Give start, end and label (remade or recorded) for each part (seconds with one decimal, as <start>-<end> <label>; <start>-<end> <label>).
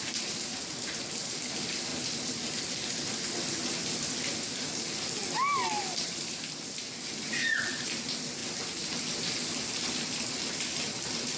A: 0.0-1.9 remade; 1.9-2.6 recorded; 2.6-5.2 remade; 5.2-5.9 recorded; 5.9-8.4 remade; 8.4-10.2 recorded; 10.2-11.4 remade